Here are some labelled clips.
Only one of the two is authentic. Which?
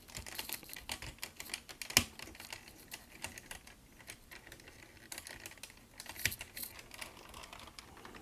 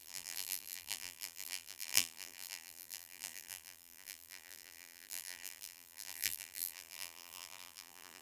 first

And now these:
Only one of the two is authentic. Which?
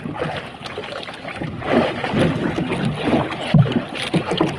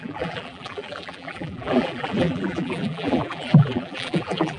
first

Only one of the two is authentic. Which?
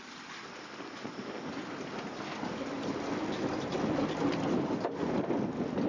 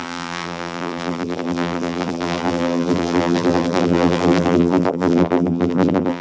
first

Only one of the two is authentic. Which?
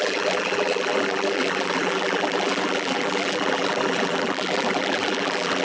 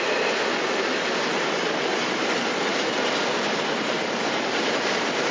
second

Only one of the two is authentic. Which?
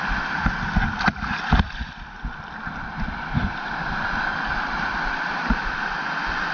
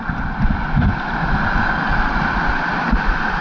first